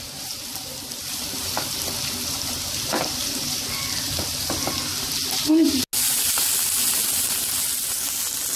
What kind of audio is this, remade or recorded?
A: recorded